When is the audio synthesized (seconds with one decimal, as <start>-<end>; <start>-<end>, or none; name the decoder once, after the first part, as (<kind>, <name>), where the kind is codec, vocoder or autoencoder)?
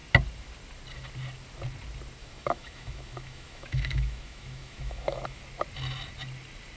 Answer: 2.2-5.4 (autoencoder, DAC-VAE)